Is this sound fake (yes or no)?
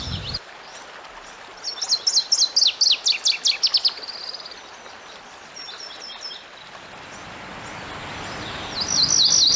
no